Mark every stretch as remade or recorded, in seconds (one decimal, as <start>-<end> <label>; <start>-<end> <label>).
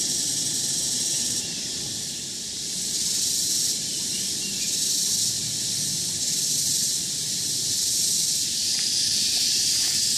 0.0-4.1 remade; 4.1-7.8 recorded; 7.8-10.2 remade